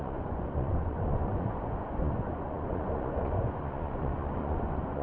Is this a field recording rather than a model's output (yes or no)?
no